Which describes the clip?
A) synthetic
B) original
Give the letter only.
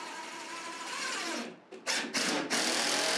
A